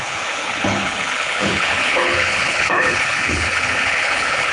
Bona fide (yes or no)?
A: no